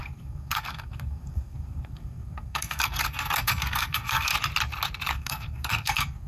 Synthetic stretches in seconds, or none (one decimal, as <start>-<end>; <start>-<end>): 0.0-4.3; 5.1-6.3